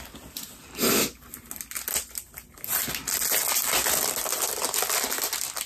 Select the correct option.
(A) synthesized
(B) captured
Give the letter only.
B